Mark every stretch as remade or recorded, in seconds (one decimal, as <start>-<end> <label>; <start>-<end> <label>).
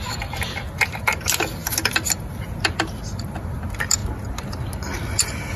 0.0-5.6 recorded